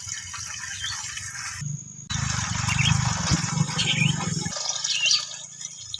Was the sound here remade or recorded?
recorded